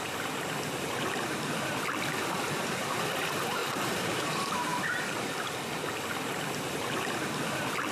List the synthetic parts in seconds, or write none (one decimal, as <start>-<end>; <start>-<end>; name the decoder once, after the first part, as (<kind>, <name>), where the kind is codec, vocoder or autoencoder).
3.6-4.3 (vocoder, BigVGAN v2)